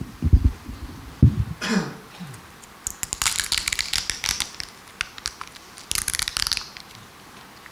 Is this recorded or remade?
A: recorded